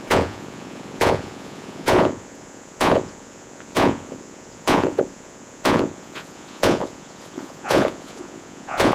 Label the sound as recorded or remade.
remade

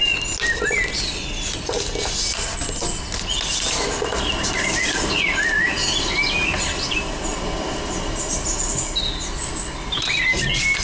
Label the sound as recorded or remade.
recorded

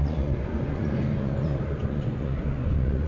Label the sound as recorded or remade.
remade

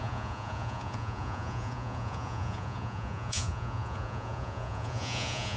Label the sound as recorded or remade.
remade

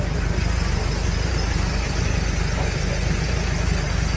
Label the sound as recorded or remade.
remade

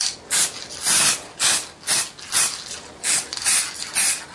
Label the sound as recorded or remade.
recorded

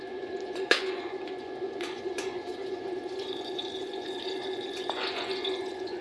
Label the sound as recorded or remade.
remade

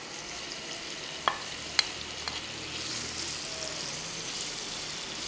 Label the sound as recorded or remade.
recorded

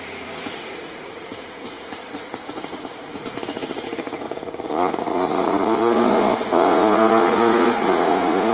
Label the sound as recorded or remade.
remade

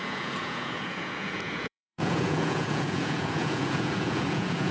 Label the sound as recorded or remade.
remade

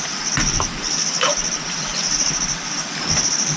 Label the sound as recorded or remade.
recorded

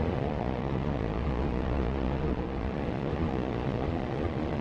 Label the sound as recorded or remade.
remade